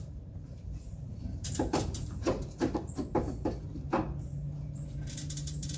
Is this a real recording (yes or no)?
no